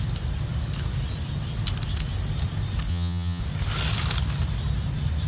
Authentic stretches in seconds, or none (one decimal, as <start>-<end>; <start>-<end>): 0.0-2.9; 3.4-5.3